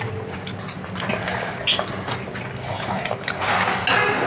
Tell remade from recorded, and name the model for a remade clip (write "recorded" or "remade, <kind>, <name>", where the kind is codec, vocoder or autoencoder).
recorded